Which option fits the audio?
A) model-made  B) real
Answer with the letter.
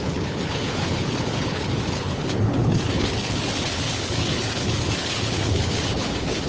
A